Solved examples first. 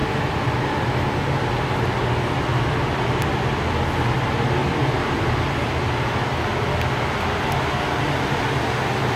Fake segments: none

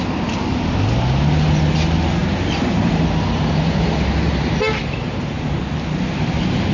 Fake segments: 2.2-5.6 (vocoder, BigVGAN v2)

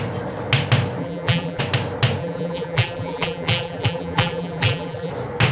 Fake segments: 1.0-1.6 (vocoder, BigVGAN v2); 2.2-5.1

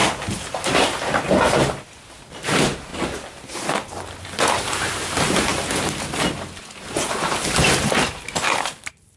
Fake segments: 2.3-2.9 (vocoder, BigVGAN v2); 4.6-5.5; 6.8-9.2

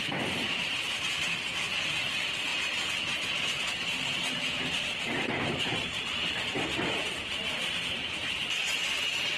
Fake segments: 0.0-2.5 (vocoder, BigVGAN v2); 4.7-9.4

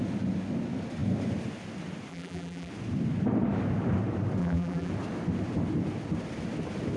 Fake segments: 2.1-2.7 (vocoder, BigVGAN v2); 4.4-4.9

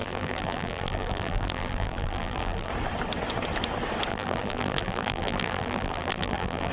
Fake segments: 0.0-2.7 (vocoder, BigVGAN v2); 4.1-6.7

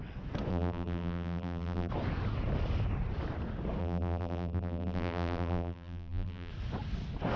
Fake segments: 0.5-1.9 (vocoder, BigVGAN v2); 3.8-6.5